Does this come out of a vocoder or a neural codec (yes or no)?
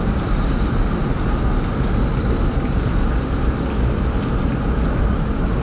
no